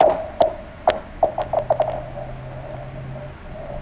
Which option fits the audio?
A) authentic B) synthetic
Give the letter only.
A